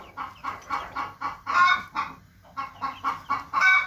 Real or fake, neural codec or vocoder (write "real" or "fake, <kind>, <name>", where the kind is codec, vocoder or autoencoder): real